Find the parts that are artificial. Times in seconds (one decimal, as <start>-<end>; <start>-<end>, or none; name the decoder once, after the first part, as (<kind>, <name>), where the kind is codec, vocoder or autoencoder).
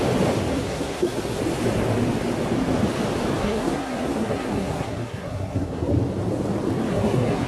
0.5-1.4 (codec, SNAC); 3.4-5.9; 6.9-7.5